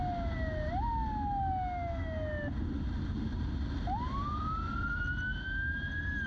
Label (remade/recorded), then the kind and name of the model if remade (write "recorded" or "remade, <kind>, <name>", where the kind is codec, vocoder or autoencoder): recorded